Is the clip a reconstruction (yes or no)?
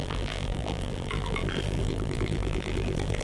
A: yes